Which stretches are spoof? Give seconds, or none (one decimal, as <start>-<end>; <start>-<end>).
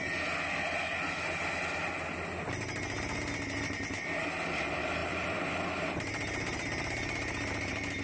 5.0-8.0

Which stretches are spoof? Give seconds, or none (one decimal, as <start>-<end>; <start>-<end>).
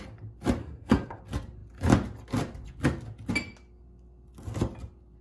0.6-1.2